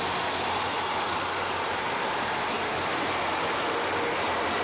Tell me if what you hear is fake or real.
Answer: real